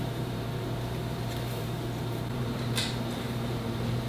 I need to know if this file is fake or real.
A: fake